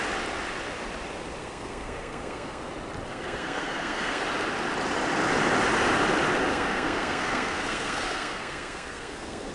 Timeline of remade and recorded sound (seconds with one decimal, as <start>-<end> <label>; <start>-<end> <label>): 0.0-1.4 recorded; 1.4-2.7 remade; 2.7-3.1 recorded; 3.1-4.2 remade; 4.2-6.5 recorded; 6.5-9.5 remade